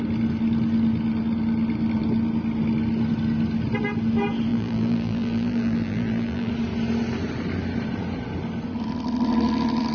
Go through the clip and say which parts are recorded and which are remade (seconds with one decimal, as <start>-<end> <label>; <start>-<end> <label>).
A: 0.0-4.5 recorded; 4.5-6.5 remade; 6.5-9.9 recorded